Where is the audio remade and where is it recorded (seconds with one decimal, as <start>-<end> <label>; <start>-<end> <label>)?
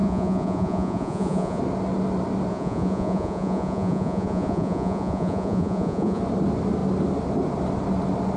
0.0-1.6 remade; 1.6-2.5 recorded; 2.5-6.2 remade; 6.2-8.4 recorded